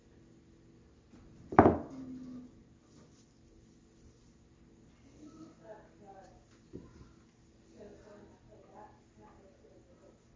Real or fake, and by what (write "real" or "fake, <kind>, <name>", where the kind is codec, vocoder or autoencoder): real